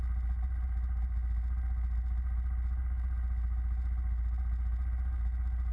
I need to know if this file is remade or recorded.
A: recorded